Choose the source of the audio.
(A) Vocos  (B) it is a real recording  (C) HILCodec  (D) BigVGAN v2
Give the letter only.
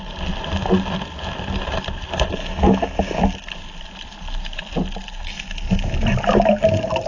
B